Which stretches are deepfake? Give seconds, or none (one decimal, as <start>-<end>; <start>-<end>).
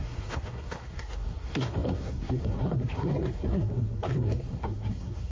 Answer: 0.0-5.3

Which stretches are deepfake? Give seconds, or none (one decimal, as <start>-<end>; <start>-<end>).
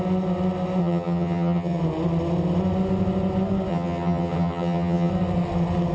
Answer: 0.8-1.8; 3.7-5.1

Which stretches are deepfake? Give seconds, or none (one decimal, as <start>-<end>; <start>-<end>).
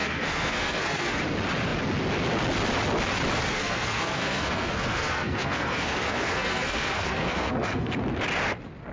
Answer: 0.0-1.2; 3.5-8.0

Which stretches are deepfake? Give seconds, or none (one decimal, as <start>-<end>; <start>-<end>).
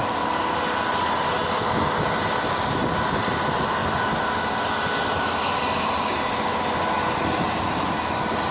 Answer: none